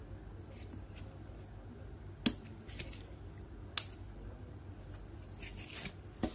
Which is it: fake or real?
real